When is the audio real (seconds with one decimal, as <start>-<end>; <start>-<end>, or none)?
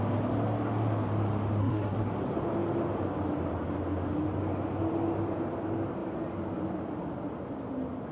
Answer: 0.0-1.6; 2.1-8.1